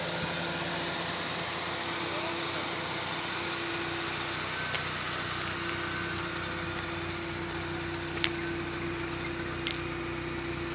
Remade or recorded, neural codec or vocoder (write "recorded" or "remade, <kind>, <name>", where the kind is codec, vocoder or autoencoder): recorded